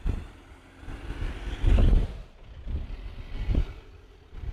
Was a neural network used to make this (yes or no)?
no